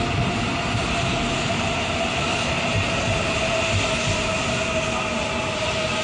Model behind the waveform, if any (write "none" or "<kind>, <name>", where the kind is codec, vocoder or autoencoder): none